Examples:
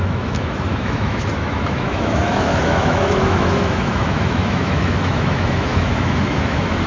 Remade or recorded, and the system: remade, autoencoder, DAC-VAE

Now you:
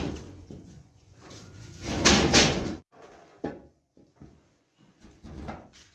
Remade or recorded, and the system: remade, vocoder, Vocos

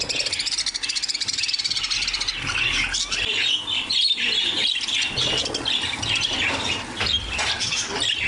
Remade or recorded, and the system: recorded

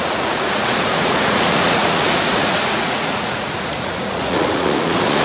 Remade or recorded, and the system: remade, vocoder, Vocos